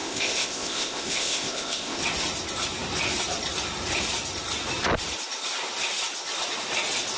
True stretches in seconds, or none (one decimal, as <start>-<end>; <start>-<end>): 2.0-7.2